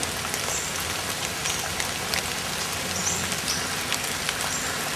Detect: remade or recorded recorded